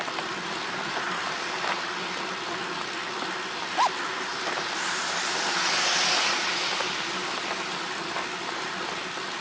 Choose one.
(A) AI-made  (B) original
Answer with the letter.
B